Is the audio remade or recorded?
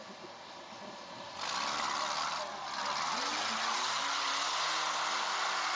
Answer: recorded